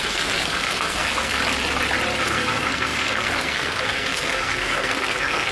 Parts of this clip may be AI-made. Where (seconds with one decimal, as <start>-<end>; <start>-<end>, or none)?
0.0-1.4; 2.2-5.5